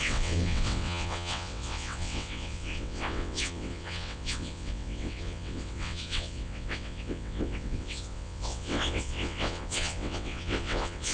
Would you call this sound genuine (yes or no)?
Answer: no